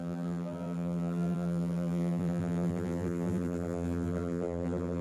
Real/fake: fake